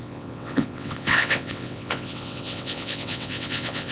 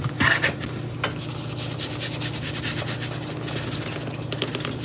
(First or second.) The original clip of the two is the second